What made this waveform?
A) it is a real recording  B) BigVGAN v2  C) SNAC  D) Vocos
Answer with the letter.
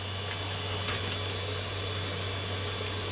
A